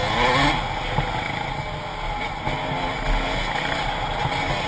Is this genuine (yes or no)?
yes